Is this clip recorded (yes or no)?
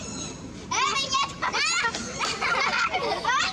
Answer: yes